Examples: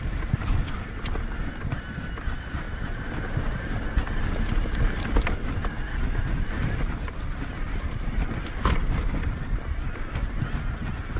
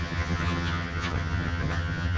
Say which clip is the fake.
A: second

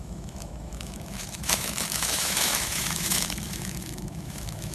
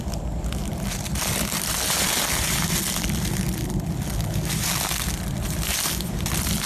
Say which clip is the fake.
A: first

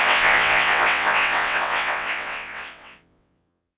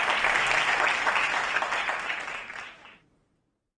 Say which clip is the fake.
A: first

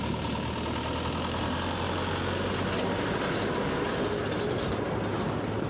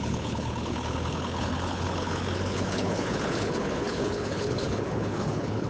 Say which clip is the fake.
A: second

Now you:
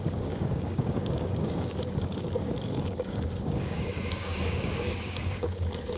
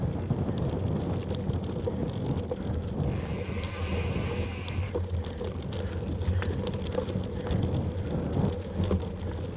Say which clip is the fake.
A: first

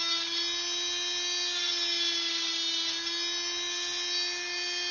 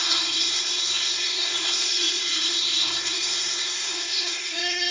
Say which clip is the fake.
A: second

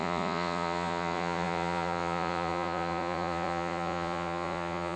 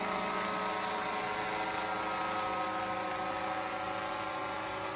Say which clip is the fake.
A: first